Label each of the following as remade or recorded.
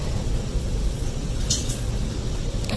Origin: remade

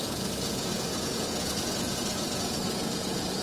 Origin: remade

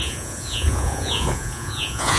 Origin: remade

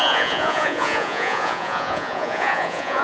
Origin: remade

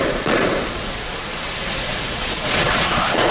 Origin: remade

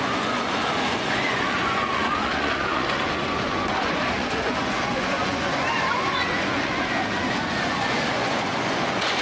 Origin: remade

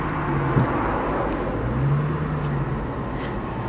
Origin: recorded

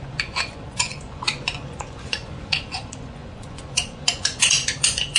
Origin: remade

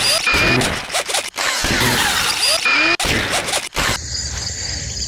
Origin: recorded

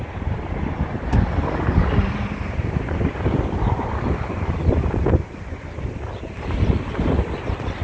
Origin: recorded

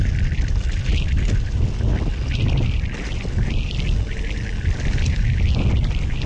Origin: recorded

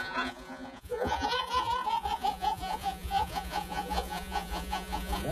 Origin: remade